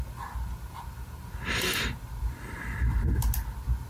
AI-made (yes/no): no